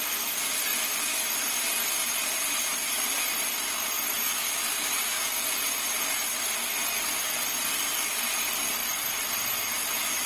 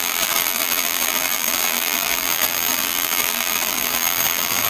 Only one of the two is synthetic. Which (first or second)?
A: second